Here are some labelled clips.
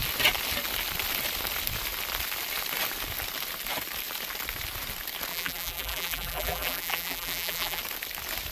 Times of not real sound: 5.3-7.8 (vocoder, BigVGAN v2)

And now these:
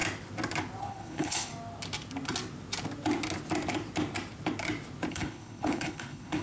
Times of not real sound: 0.8-1.5 (codec, HILCodec); 5.1-6.4

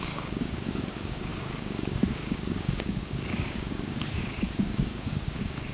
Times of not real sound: 0.0-5.7 (codec, DAC)

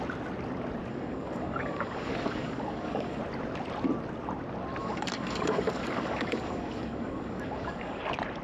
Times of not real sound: 0.9-3.2 (codec, DAC); 4.8-8.0

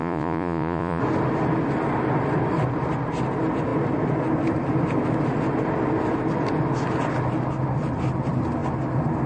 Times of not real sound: 0.0-1.0 (vocoder, Vocos)